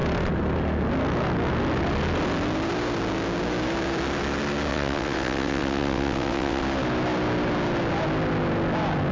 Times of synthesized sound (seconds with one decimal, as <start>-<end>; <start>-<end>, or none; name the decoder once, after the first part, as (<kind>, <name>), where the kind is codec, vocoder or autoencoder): 4.7-6.6 (vocoder, WaveNeXt)